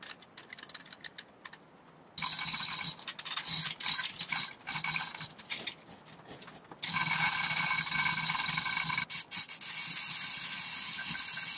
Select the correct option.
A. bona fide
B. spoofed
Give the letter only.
A